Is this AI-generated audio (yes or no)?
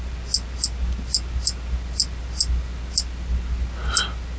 no